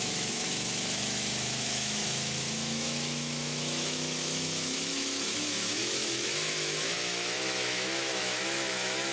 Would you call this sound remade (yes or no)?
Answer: yes